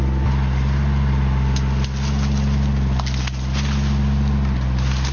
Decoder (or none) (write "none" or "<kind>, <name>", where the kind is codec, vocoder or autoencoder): none